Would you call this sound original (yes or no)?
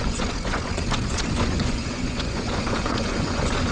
no